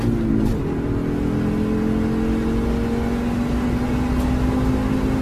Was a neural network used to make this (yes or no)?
no